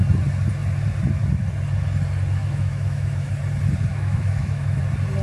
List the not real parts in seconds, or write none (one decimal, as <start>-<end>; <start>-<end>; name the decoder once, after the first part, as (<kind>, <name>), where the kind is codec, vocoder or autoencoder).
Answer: 2.4-3.3 (autoencoder, DAC-VAE); 3.9-4.8